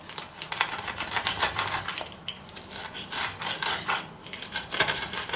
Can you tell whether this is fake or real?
fake